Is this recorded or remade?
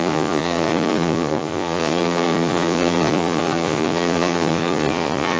remade